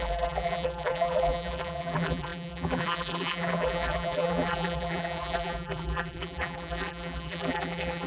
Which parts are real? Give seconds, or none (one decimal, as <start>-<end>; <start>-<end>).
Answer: none